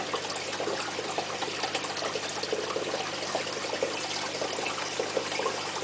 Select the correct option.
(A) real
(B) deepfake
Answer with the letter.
A